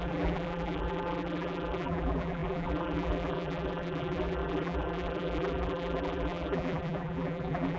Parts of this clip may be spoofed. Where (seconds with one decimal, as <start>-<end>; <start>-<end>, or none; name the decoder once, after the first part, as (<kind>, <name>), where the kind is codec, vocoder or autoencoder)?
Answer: 0.0-7.8 (vocoder, BigVGAN v2)